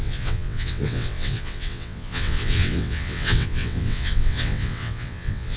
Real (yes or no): no